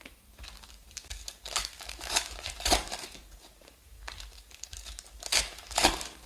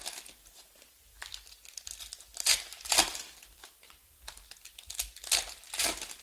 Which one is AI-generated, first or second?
first